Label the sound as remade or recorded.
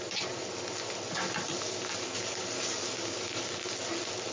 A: recorded